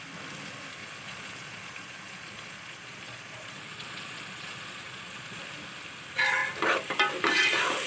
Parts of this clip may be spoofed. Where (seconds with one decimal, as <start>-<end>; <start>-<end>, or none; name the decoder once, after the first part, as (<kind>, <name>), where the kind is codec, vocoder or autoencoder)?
0.8-5.4 (vocoder, Vocos)

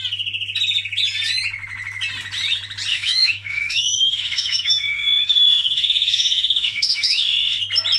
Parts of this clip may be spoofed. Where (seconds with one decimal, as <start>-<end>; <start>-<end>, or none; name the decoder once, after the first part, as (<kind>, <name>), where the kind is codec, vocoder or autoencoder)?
2.9-7.6 (autoencoder, DAC-VAE)

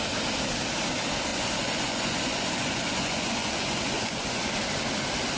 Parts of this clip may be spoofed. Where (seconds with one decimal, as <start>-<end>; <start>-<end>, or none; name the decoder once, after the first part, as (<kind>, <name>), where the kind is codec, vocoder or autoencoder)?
1.3-4.5 (vocoder, Vocos)